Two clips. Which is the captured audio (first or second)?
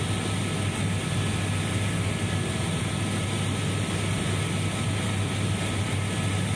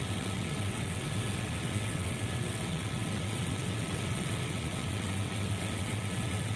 first